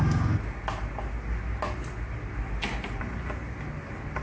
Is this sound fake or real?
real